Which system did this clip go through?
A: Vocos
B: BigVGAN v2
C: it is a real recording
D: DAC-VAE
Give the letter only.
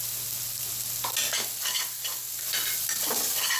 C